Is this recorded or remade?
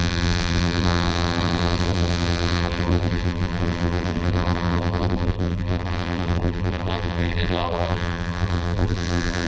remade